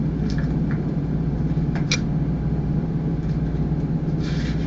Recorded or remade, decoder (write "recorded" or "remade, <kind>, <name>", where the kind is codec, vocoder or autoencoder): recorded